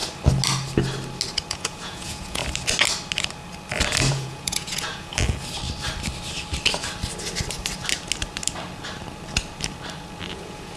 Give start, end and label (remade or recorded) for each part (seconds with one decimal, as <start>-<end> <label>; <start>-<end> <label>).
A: 0.0-1.5 recorded; 1.5-2.4 remade; 2.4-4.1 recorded; 4.1-5.1 remade; 5.1-10.3 recorded; 10.3-10.8 remade

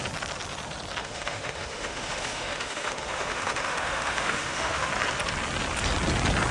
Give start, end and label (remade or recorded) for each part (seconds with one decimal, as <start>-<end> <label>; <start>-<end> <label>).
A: 0.0-1.0 recorded; 1.0-4.9 remade; 4.9-6.5 recorded

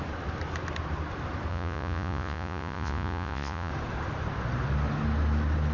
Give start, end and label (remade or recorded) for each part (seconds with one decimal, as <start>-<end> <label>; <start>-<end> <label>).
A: 0.0-1.5 recorded; 1.5-3.7 remade; 3.7-5.7 recorded